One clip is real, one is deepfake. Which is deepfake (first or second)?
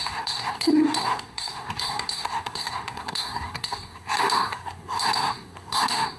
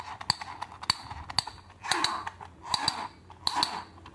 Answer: first